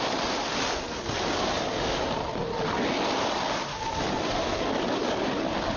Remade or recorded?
recorded